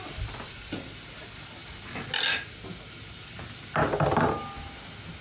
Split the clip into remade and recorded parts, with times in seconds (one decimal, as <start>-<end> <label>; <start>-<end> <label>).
0.0-5.2 recorded